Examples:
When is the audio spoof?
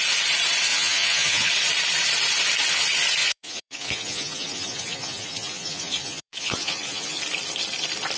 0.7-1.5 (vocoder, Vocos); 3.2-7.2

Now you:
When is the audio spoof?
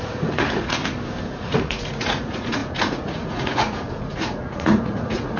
0.0-0.8 (vocoder, Vocos); 1.3-5.4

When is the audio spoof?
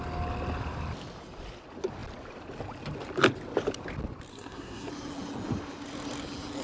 4.3-4.9 (codec, SNAC)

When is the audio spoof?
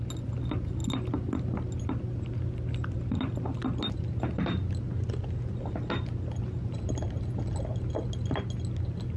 none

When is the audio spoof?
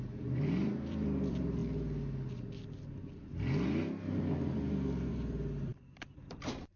0.0-1.6 (vocoder, BigVGAN v2); 5.1-6.8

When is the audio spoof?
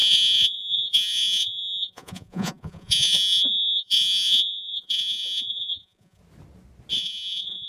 0.0-6.2 (vocoder, Vocos); 7.0-7.7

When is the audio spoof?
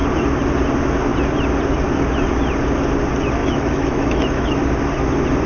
3.4-4.7 (autoencoder, DAC-VAE)